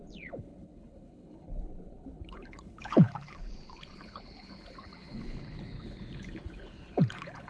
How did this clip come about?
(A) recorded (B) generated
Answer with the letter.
B